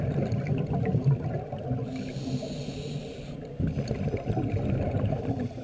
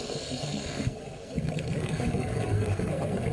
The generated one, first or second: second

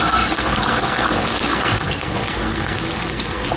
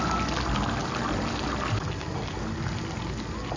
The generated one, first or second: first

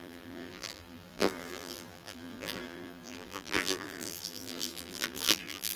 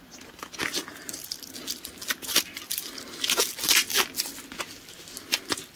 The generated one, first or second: first